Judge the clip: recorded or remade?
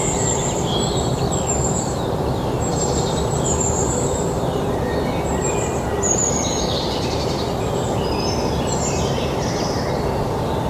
remade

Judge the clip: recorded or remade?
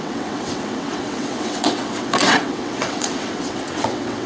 remade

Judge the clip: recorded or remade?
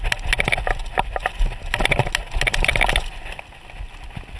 recorded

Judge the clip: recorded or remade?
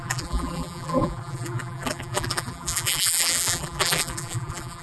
remade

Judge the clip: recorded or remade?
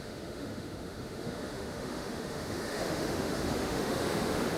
remade